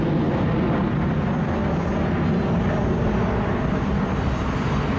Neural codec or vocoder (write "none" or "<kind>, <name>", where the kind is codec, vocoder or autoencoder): none